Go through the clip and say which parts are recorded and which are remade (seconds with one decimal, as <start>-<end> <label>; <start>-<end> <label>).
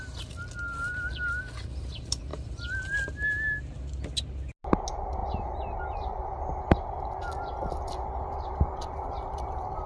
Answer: 0.0-9.9 recorded